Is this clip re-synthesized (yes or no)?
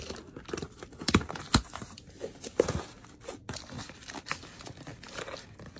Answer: no